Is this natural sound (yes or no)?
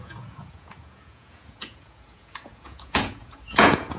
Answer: no